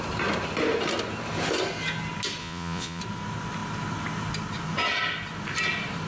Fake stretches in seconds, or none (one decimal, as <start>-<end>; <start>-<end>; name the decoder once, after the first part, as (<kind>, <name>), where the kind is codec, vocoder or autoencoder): 2.4-3.0 (vocoder, Vocos)

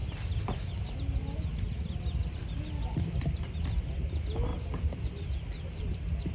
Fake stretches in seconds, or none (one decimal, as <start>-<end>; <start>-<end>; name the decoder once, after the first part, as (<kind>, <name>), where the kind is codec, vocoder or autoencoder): 4.5-6.3 (vocoder, BigVGAN v2)

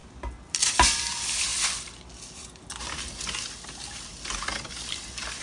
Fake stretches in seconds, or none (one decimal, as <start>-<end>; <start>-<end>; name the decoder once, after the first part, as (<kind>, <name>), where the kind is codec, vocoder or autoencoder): 0.0-1.1 (vocoder, BigVGAN v2)